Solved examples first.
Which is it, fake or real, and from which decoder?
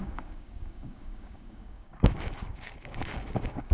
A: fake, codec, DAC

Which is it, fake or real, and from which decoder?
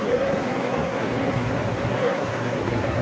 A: fake, codec, SNAC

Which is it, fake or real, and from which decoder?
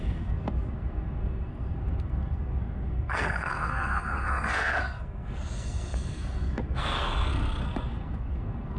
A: fake, codec, SNAC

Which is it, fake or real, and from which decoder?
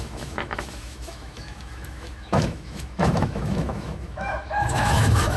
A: fake, autoencoder, DAC-VAE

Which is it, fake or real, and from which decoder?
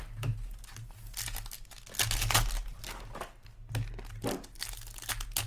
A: real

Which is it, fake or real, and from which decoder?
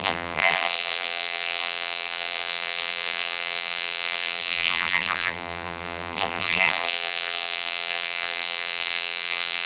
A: fake, vocoder, BigVGAN v2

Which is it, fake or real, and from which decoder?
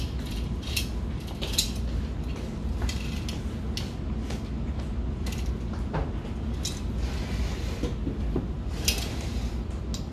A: real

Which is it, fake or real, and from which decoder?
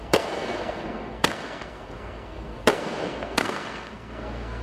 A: fake, codec, SNAC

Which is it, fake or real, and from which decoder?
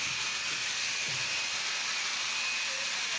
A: real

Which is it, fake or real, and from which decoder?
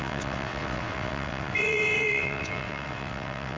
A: fake, vocoder, WaveNeXt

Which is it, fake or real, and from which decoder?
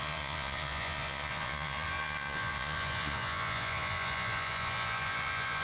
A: fake, vocoder, Vocos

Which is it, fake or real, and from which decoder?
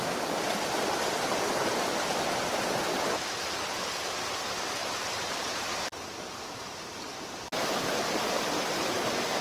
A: real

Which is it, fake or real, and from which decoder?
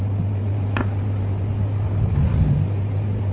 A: real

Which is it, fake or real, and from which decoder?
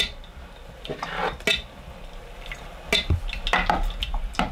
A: real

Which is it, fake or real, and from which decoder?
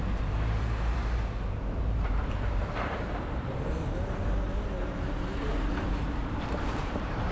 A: fake, vocoder, BigVGAN v2